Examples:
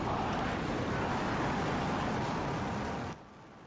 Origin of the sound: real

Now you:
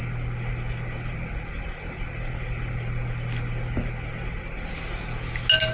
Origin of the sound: real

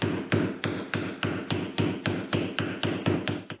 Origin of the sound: real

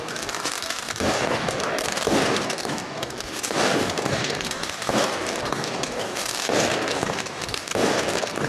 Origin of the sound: fake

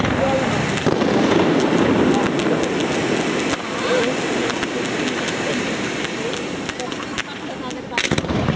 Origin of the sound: real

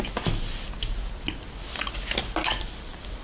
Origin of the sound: real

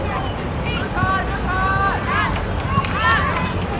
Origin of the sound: real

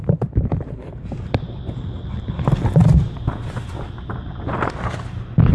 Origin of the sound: real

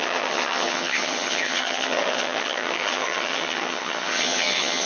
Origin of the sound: fake